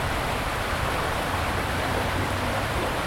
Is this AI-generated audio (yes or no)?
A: yes